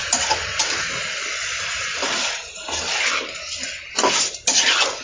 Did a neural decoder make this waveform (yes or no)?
no